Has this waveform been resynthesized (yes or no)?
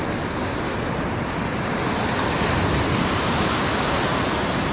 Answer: no